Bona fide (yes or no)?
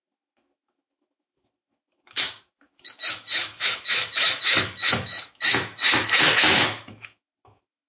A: no